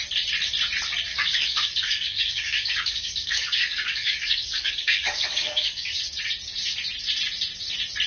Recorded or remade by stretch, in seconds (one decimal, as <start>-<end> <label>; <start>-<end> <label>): 0.0-1.1 recorded; 1.1-6.0 remade; 6.0-8.1 recorded